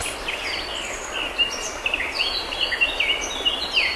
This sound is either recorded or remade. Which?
recorded